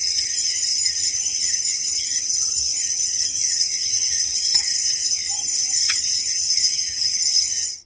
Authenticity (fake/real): fake